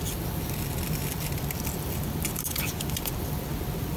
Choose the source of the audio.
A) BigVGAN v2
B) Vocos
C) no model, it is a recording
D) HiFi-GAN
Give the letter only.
C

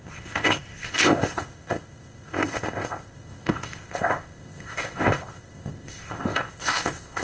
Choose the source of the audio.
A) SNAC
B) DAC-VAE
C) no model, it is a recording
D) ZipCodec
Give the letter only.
D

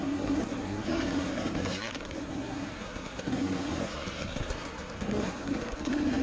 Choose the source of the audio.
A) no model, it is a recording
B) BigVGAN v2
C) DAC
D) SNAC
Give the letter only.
D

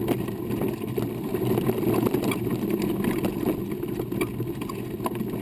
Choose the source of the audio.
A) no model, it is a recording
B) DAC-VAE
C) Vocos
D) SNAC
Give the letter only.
A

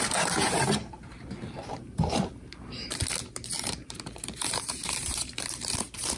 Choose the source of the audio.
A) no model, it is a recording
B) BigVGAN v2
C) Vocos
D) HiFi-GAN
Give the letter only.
B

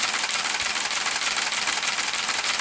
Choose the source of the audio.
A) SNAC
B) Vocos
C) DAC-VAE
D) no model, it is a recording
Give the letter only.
D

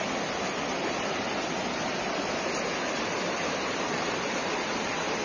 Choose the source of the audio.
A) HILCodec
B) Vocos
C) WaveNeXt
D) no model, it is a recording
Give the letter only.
D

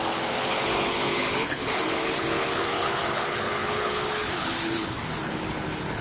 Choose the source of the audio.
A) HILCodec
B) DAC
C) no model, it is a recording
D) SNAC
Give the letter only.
A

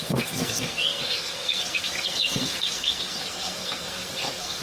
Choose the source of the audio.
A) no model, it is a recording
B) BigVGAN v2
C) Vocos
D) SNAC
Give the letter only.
D